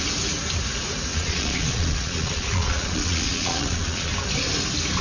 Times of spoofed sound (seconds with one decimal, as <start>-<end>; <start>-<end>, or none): 1.1-4.1